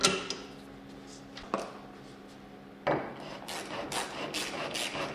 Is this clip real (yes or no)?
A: yes